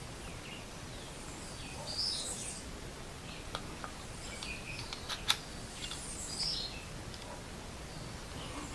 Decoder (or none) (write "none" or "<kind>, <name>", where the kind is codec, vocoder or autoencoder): none